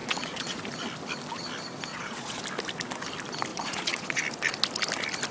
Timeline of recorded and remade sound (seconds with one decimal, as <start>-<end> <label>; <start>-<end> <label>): 0.0-0.6 remade; 0.6-1.9 recorded; 1.9-2.4 remade; 2.4-3.5 recorded; 3.5-4.2 remade; 4.2-5.3 recorded